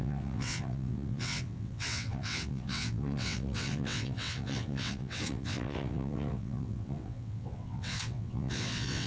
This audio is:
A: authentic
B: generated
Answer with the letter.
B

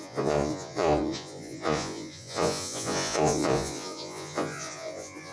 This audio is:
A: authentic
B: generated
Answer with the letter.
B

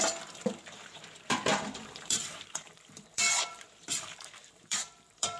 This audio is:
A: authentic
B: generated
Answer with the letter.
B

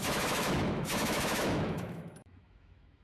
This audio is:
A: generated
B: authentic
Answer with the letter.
A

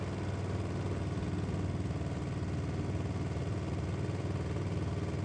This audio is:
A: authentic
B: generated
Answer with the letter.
A